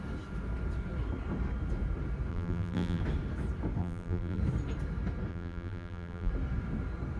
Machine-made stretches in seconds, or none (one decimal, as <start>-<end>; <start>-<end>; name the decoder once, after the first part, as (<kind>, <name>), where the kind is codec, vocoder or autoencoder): 2.3-3.0 (vocoder, BigVGAN v2); 3.8-4.4; 5.3-6.3